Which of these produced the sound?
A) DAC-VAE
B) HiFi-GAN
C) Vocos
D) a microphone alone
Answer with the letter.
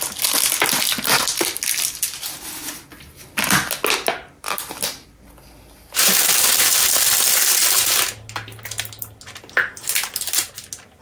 D